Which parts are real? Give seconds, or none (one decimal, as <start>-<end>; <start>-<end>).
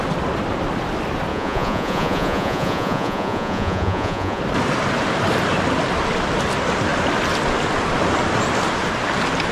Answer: 0.0-1.3; 4.4-9.5